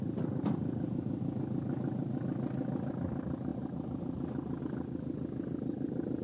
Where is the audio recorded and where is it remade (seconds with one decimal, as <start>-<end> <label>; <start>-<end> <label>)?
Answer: 0.0-6.2 recorded